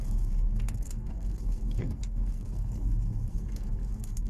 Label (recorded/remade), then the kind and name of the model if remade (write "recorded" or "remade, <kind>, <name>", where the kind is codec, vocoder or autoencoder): remade, codec, SNAC